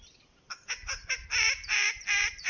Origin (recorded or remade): remade